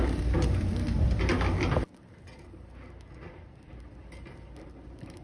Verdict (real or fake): real